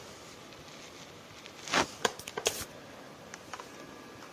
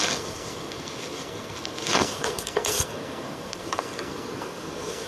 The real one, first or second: first